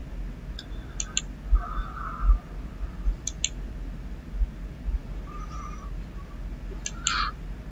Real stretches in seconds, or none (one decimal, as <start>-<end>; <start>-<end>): 0.0-7.7